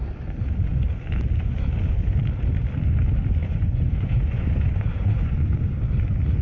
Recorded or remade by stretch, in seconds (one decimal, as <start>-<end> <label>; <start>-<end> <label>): 0.0-3.4 recorded; 3.4-5.8 remade; 5.8-6.4 recorded